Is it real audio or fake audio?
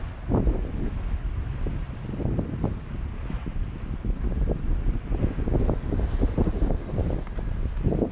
real